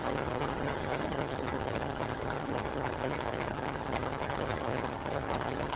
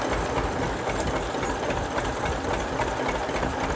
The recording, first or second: second